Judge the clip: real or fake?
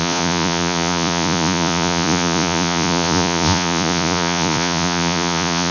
fake